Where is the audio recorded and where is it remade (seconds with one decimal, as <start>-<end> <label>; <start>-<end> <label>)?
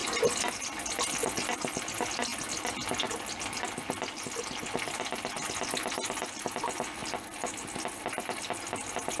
0.0-9.2 recorded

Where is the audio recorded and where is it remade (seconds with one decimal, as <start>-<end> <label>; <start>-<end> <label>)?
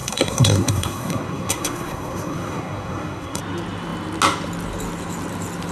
0.0-3.4 remade; 3.4-5.7 recorded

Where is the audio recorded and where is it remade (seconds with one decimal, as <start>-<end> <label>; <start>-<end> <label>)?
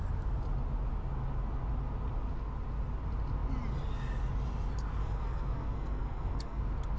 0.0-5.0 recorded; 5.0-6.6 remade; 6.6-7.0 recorded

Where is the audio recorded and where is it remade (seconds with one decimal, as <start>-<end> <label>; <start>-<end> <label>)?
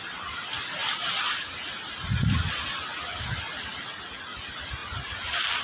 0.0-5.6 recorded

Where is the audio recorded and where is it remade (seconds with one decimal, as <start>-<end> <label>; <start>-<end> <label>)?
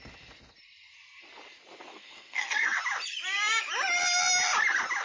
0.0-1.9 recorded; 1.9-2.8 remade; 2.8-5.0 recorded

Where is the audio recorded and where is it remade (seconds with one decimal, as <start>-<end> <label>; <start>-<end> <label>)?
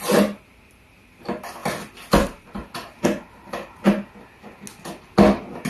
0.0-5.7 recorded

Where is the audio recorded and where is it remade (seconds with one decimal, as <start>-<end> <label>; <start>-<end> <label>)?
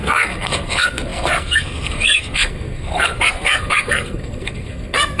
0.0-5.2 remade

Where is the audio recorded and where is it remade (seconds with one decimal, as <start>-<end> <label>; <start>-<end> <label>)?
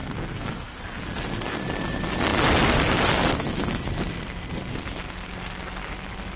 0.0-0.8 remade; 0.8-6.4 recorded